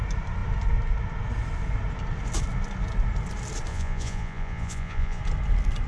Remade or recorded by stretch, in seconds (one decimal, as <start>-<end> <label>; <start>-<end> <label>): 0.0-3.7 recorded; 3.7-5.2 remade; 5.2-5.9 recorded